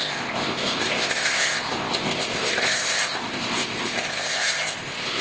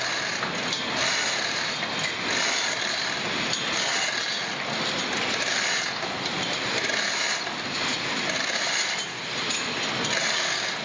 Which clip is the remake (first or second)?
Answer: first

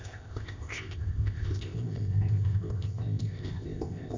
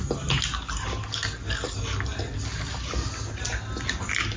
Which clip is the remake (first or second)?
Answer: first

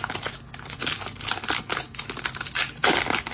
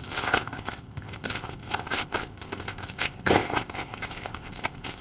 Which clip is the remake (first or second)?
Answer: second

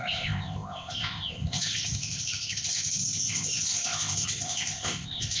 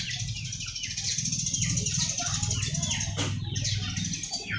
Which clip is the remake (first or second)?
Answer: first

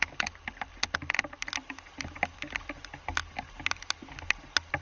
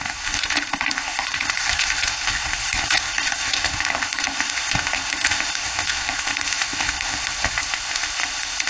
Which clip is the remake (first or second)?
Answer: second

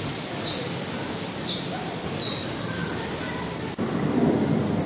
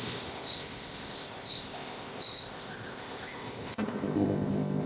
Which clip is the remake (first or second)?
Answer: second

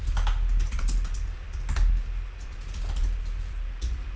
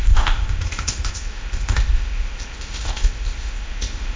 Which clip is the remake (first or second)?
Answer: second